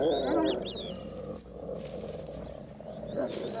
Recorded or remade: recorded